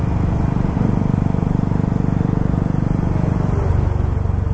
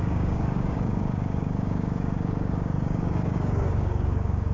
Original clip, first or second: first